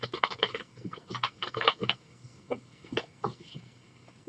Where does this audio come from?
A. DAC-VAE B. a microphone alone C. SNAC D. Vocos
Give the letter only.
C